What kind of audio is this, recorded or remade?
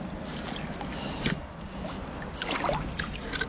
recorded